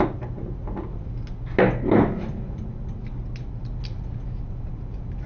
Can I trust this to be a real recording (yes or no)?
yes